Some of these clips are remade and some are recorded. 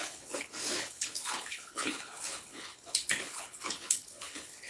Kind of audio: remade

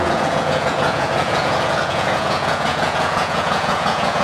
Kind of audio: remade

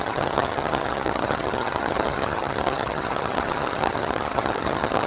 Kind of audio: remade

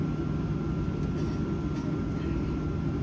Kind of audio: recorded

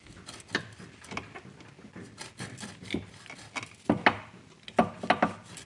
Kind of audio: recorded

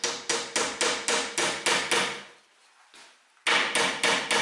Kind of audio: recorded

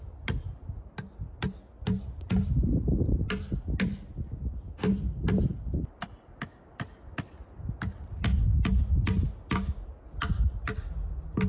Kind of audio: recorded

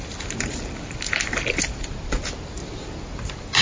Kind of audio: recorded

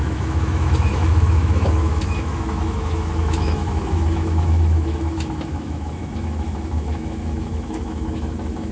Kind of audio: remade